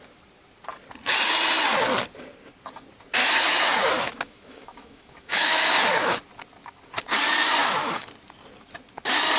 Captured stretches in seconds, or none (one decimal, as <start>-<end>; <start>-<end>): 0.0-3.2; 6.2-7.6; 8.1-9.4